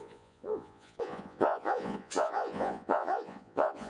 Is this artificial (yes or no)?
yes